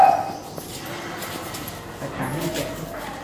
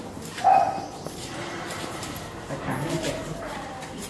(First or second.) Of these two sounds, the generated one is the second